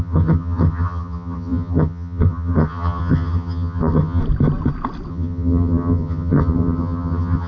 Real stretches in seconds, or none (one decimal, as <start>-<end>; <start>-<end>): 4.2-5.1